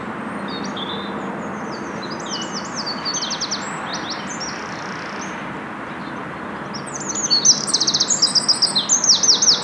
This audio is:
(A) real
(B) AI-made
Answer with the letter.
A